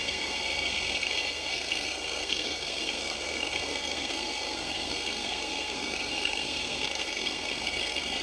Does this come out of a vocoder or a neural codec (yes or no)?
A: yes